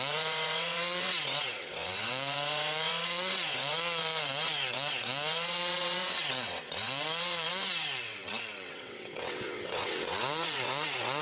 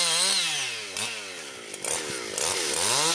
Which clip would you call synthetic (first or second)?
first